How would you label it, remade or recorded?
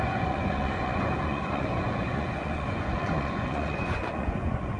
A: remade